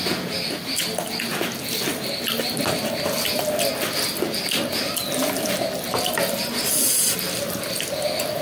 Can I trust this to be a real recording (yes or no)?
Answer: yes